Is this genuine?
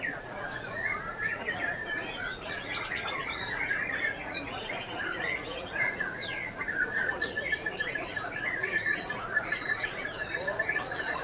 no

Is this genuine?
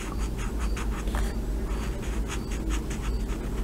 yes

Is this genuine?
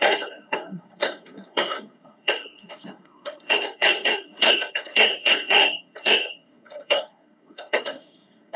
no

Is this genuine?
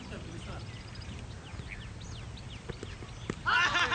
yes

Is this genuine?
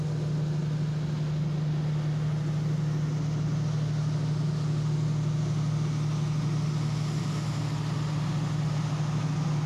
yes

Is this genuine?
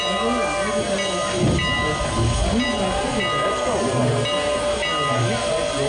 yes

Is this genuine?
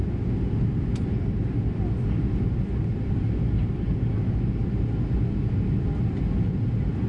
yes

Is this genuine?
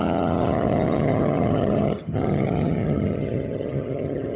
no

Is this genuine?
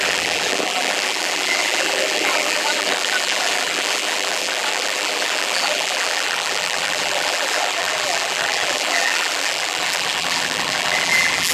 no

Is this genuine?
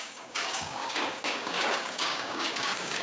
no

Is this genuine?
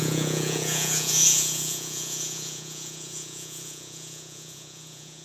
no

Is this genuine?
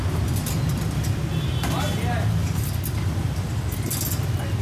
yes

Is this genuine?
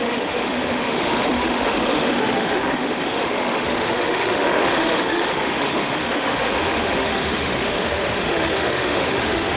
no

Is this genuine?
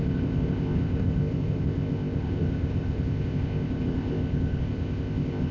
no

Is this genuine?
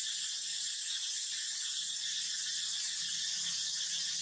yes